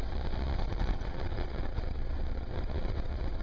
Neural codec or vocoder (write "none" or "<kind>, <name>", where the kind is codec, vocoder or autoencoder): vocoder, WaveNeXt